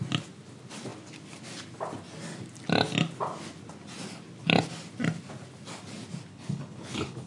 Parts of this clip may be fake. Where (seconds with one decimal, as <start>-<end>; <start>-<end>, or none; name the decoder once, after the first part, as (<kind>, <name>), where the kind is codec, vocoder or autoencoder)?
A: 6.3-7.3 (codec, HILCodec)